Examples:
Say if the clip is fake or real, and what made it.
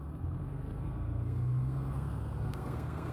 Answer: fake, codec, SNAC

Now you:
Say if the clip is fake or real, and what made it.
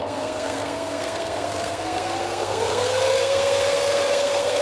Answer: fake, codec, SNAC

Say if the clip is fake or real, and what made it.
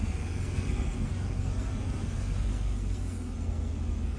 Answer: fake, codec, SNAC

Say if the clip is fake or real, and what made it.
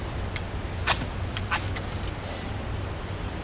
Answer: real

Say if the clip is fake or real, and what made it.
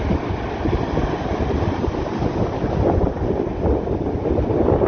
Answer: real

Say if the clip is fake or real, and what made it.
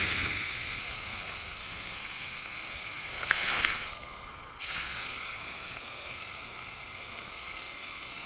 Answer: fake, codec, SNAC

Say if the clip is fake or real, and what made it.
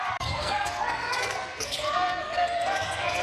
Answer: fake, codec, SNAC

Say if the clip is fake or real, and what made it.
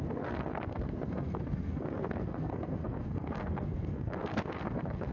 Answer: fake, codec, SNAC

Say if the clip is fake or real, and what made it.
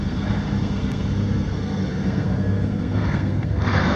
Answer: fake, codec, SNAC